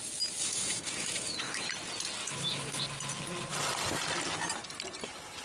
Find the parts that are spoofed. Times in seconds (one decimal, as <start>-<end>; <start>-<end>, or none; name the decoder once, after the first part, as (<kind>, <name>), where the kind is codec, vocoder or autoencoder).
0.4-1.7 (autoencoder, DAC-VAE); 2.2-2.8